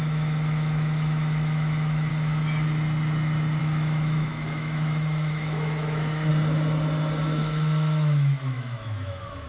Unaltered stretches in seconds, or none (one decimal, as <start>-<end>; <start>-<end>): 2.1-3.6; 6.3-7.2